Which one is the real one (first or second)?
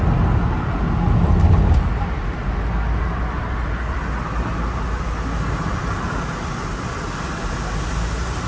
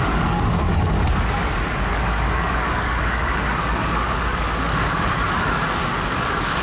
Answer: first